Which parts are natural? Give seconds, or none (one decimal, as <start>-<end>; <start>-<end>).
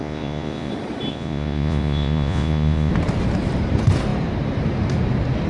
0.7-1.1; 2.9-5.5